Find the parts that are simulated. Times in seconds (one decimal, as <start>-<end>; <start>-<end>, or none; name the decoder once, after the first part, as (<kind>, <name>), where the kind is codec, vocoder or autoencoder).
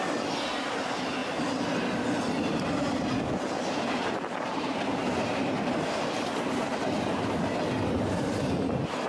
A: none